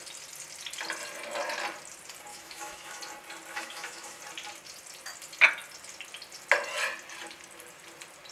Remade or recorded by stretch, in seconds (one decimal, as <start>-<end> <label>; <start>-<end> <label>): 0.0-2.3 recorded; 2.3-3.0 remade; 3.0-3.5 recorded; 3.5-4.2 remade; 4.2-8.3 recorded